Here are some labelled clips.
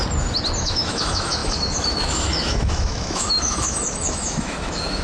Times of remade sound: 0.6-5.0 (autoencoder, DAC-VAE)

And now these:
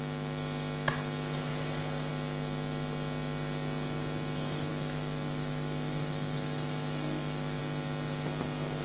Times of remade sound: 4.7-7.6 (autoencoder, DAC-VAE)

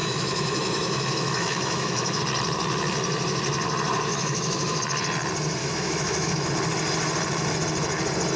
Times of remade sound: 0.0-2.2 (autoencoder, DAC-VAE); 4.1-4.8; 5.6-6.5

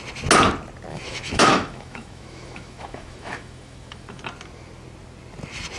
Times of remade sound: 0.9-4.2 (autoencoder, DAC-VAE)

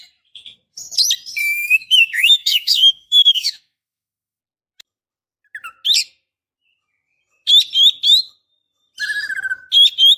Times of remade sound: 1.4-4.4 (autoencoder, DAC-VAE)

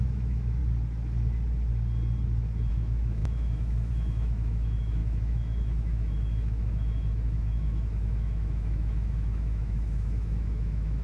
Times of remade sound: 0.0-0.6 (autoencoder, DAC-VAE); 2.7-11.0